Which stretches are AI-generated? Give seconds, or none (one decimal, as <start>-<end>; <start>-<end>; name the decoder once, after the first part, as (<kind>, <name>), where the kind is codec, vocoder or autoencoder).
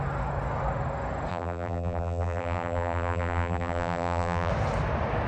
1.3-4.5 (vocoder, BigVGAN v2)